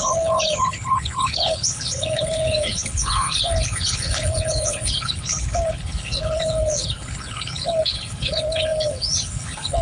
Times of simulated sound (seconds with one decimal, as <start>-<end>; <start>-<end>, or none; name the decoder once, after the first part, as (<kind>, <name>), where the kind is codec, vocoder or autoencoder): 0.0-9.8 (codec, HILCodec)